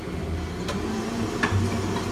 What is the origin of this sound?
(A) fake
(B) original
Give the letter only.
B